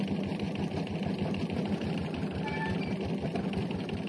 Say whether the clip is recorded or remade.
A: recorded